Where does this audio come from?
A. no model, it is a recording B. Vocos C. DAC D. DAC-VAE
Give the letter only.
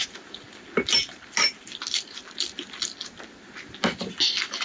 A